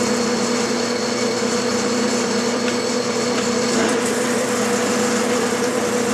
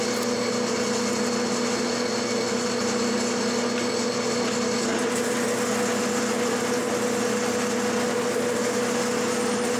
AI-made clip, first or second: first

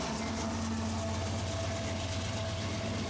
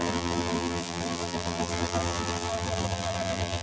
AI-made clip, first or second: second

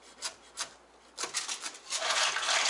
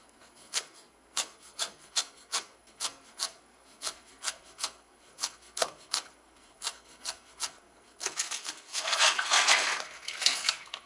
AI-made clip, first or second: second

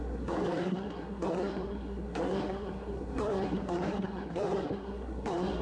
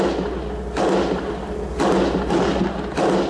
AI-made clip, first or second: first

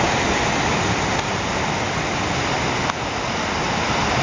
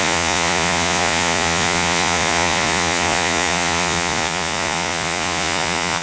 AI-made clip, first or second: second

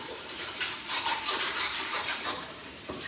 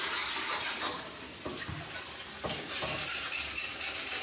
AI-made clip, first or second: first